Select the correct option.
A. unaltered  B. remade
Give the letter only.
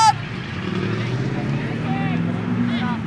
A